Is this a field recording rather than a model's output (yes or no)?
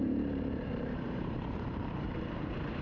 no